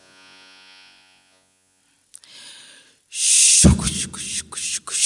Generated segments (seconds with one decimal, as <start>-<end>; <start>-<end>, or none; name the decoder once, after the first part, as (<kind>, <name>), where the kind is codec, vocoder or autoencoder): 0.0-1.8 (vocoder, Vocos)